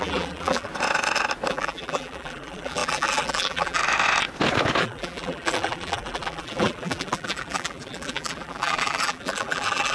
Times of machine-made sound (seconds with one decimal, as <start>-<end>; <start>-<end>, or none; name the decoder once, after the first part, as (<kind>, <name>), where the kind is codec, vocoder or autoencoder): 0.0-0.7 (vocoder, BigVGAN v2); 1.5-3.8; 4.8-9.9